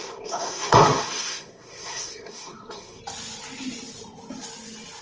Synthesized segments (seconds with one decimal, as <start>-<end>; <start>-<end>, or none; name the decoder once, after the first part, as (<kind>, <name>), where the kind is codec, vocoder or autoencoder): 0.0-3.0 (codec, SNAC)